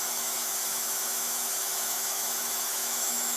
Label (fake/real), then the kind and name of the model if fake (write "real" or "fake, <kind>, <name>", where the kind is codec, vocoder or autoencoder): fake, autoencoder, DAC-VAE